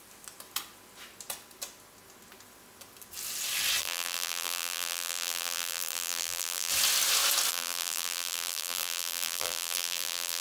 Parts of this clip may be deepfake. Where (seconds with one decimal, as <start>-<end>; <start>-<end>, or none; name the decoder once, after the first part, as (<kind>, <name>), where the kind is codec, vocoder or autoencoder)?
3.8-6.7 (vocoder, BigVGAN v2); 7.5-10.4